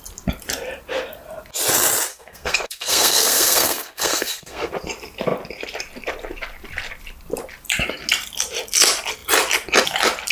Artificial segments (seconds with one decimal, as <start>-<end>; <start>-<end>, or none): 2.1-4.7